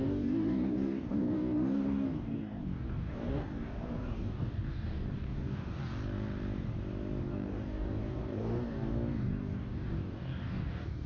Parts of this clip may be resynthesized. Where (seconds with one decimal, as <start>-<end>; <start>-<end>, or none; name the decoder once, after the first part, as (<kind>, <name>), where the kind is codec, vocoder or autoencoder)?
0.0-5.8 (codec, DAC); 7.2-11.1